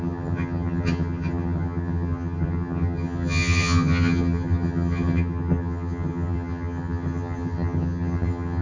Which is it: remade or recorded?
remade